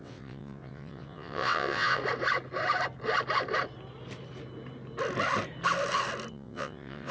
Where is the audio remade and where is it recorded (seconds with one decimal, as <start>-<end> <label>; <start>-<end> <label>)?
0.0-2.0 remade; 2.0-6.3 recorded; 6.3-7.1 remade